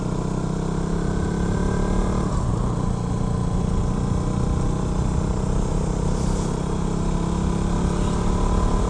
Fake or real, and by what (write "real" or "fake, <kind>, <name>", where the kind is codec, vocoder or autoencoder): real